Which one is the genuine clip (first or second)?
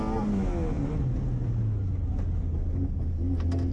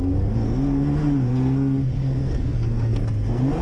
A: first